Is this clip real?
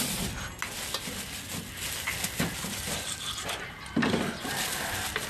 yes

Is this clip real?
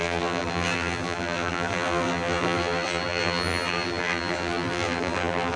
no